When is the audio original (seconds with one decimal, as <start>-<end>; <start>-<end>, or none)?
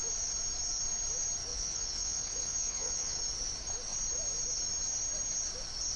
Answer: 0.0-1.5; 3.2-6.0